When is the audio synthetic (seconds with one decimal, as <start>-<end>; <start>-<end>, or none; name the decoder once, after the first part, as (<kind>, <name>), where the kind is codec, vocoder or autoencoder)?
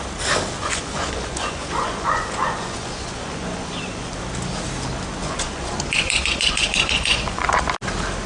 0.6-4.1 (vocoder, Vocos); 5.2-7.6